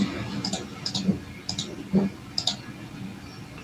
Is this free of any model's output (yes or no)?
yes